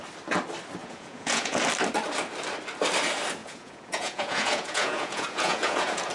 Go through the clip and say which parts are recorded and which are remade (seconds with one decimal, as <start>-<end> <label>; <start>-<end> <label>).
0.0-0.8 recorded; 0.8-1.6 remade; 1.6-3.4 recorded; 3.4-6.1 remade